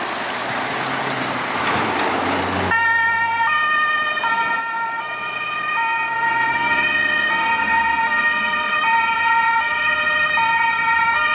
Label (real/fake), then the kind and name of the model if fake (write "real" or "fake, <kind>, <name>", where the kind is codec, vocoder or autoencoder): real